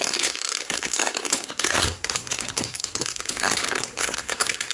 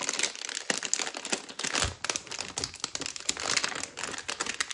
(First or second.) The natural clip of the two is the second